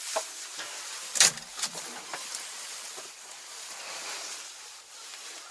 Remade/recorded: remade